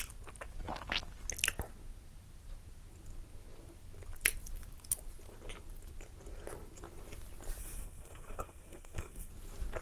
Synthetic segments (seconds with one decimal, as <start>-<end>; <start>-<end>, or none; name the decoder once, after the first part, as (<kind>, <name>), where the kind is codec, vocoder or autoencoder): 7.6-9.3 (codec, SNAC)